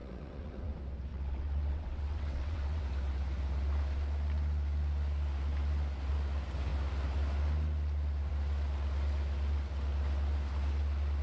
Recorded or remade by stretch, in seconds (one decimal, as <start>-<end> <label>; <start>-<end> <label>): 0.0-0.7 remade; 0.7-1.1 recorded; 1.1-2.8 remade; 2.8-11.2 recorded